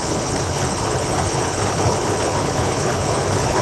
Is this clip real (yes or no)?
no